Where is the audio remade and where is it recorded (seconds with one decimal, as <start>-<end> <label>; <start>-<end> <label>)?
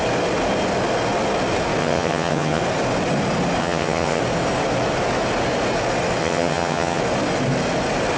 0.0-1.8 recorded; 1.8-2.6 remade; 2.6-3.6 recorded; 3.6-4.2 remade; 4.2-6.2 recorded; 6.2-7.0 remade; 7.0-8.2 recorded